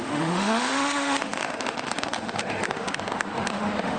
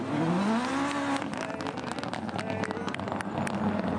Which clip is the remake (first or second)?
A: first